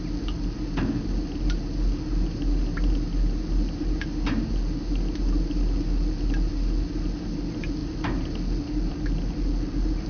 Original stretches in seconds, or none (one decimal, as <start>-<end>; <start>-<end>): 0.0-10.1